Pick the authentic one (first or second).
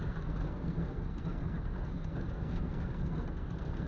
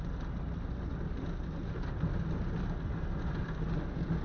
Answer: second